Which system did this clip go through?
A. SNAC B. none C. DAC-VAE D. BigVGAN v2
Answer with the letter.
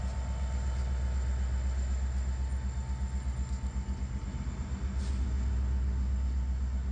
B